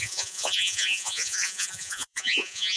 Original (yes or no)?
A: no